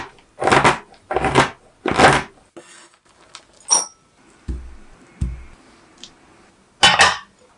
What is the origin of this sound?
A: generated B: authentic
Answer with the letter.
B